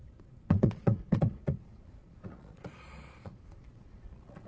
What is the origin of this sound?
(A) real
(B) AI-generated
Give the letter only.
B